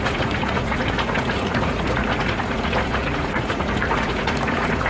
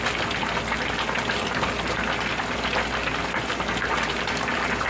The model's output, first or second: first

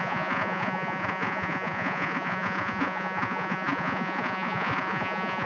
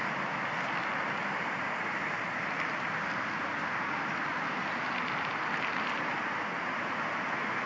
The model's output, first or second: first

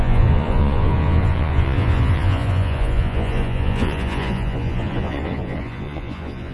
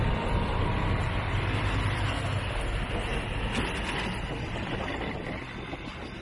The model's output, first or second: first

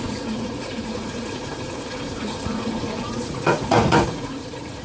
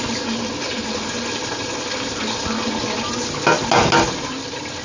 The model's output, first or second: first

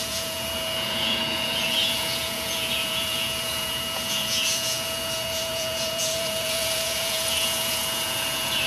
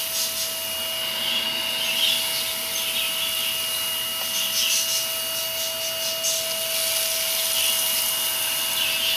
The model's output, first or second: first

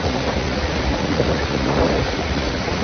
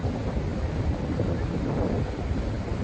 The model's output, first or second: first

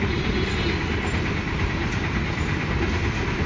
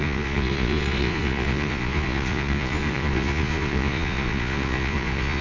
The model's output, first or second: second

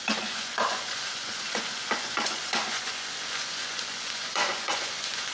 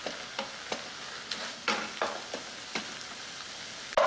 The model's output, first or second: first